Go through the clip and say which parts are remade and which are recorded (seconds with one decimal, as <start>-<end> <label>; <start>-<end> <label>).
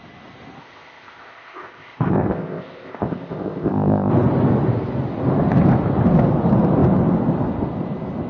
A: 0.0-0.6 recorded; 0.6-4.1 remade; 4.1-8.3 recorded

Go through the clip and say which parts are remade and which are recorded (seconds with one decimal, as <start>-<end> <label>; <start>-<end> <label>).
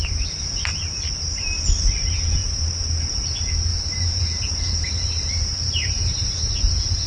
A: 0.0-2.4 recorded; 2.4-3.1 remade; 3.1-3.7 recorded; 3.7-6.5 remade; 6.5-7.1 recorded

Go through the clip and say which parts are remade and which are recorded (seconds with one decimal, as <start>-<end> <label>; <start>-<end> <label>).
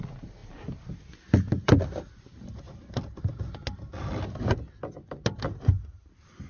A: 0.0-6.5 recorded